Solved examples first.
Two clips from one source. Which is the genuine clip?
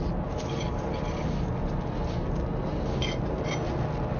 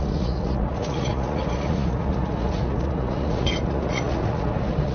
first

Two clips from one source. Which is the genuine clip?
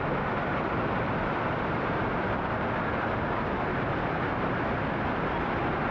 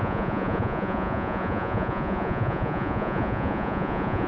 first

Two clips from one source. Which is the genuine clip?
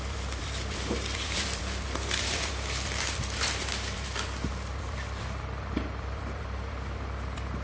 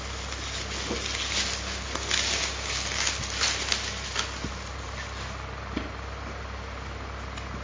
second